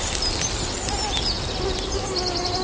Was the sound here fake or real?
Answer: real